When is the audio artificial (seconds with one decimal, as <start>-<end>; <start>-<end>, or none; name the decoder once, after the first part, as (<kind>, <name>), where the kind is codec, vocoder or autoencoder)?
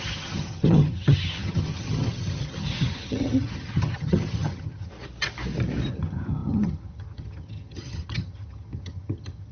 0.0-4.9 (vocoder, HiFi-GAN); 5.9-9.5